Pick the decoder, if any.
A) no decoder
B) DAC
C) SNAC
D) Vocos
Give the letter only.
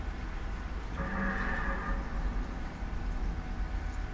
A